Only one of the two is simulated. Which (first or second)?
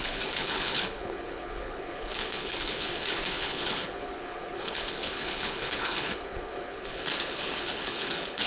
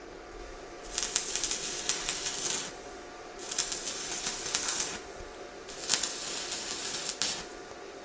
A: first